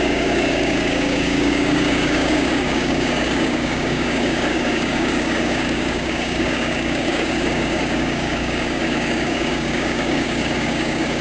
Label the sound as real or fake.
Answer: fake